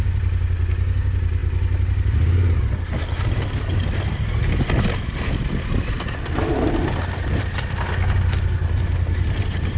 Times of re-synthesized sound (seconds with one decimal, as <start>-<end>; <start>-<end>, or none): none